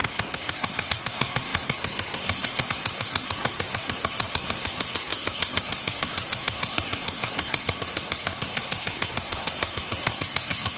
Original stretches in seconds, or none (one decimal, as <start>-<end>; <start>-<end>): none